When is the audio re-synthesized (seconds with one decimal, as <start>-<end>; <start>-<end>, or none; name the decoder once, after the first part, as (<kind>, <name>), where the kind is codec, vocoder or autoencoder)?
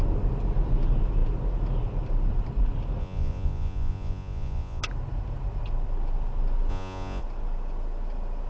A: 3.0-4.8 (vocoder, Vocos); 6.7-7.2